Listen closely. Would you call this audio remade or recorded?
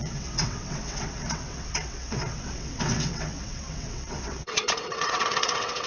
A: remade